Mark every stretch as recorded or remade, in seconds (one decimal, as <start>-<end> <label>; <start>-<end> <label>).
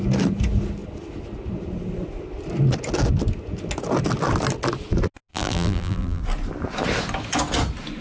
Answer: 0.0-5.3 recorded; 5.3-6.2 remade; 6.2-8.0 recorded